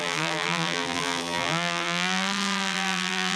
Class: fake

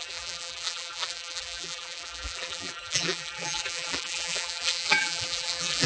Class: fake